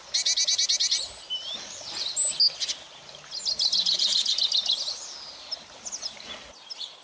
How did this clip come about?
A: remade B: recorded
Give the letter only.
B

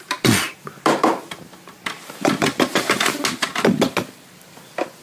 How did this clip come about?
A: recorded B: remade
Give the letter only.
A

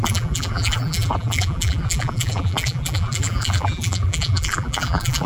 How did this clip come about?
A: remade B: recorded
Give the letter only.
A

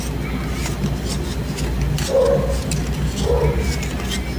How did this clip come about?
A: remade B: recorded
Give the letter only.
B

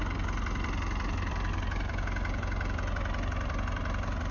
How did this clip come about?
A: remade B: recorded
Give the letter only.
A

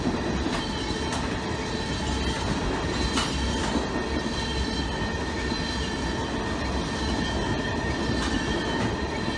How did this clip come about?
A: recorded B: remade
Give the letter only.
A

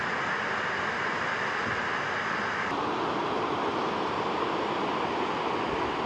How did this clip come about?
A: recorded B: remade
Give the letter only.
A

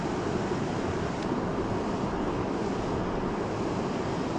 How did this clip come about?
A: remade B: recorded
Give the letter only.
B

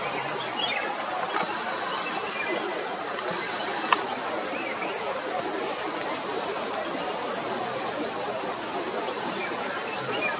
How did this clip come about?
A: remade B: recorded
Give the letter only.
B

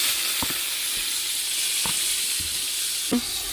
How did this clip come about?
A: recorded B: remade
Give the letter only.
B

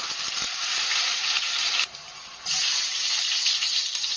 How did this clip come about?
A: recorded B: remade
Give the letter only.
B